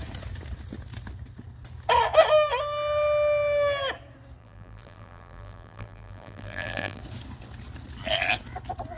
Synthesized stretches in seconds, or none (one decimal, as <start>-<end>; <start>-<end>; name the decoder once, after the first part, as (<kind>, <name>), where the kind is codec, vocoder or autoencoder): 4.4-7.0 (vocoder, BigVGAN v2)